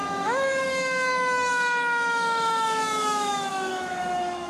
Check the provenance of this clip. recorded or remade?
remade